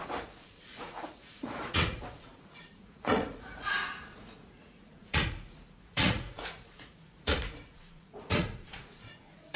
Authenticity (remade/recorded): remade